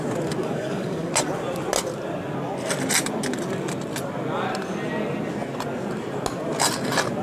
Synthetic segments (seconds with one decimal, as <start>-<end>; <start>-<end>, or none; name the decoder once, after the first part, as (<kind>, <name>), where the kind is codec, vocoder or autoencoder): 0.4-1.1 (codec, DAC)